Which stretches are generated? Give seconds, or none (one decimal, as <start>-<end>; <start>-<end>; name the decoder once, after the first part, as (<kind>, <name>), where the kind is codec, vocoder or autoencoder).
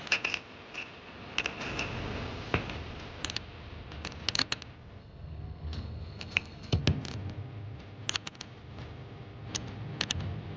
5.0-6.8 (codec, SNAC)